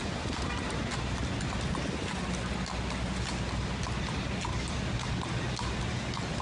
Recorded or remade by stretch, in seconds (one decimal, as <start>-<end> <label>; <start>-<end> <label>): 0.0-6.4 recorded